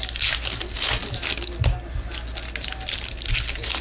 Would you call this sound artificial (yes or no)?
no